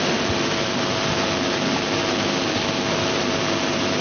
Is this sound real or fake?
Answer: real